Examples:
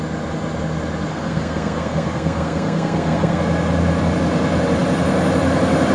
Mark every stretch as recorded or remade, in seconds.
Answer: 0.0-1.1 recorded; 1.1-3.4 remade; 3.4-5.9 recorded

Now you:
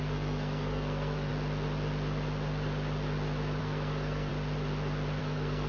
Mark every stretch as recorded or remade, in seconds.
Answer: 0.0-1.3 remade; 1.3-3.6 recorded; 3.6-4.3 remade; 4.3-5.2 recorded; 5.2-5.7 remade

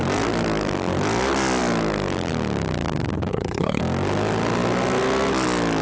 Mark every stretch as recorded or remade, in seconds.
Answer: 0.0-3.3 recorded; 3.3-3.8 remade; 3.8-5.8 recorded

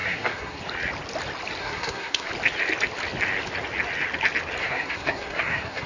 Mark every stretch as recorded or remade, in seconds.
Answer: 0.0-0.6 remade; 0.6-1.6 recorded; 1.6-2.3 remade; 2.3-4.6 recorded; 4.6-5.9 remade

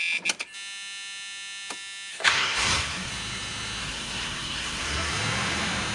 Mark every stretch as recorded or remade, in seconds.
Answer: 0.0-2.1 recorded; 2.1-3.1 remade; 3.1-3.8 recorded; 3.8-5.1 remade; 5.1-5.9 recorded